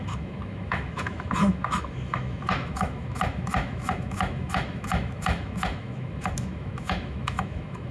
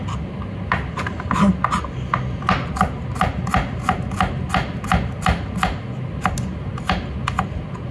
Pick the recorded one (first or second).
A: second